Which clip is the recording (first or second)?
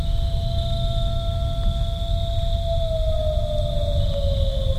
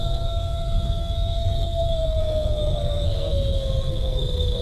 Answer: first